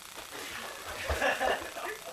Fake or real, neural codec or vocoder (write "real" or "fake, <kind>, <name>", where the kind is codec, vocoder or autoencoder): fake, vocoder, BigVGAN v2